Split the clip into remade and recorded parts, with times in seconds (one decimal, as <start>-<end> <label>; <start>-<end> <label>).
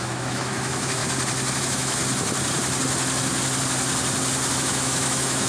0.0-1.0 remade; 1.0-1.6 recorded; 1.6-2.0 remade; 2.0-4.5 recorded; 4.5-5.5 remade